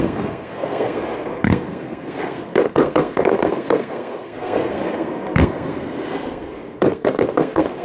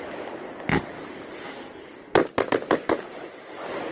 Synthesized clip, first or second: first